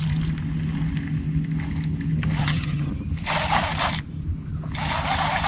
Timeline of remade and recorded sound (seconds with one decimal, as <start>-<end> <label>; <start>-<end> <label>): 0.0-2.4 recorded; 2.4-2.9 remade; 2.9-5.5 recorded